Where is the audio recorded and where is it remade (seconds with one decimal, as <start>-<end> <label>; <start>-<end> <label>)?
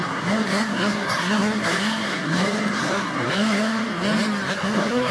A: 0.0-3.9 remade; 3.9-4.5 recorded; 4.5-5.1 remade